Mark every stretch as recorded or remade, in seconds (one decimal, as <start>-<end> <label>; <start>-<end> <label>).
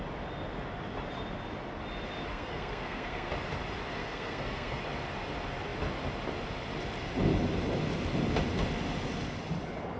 0.0-2.3 recorded; 2.3-3.3 remade; 3.3-4.0 recorded; 4.0-4.8 remade; 4.8-10.0 recorded